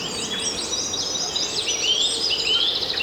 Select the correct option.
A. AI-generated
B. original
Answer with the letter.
B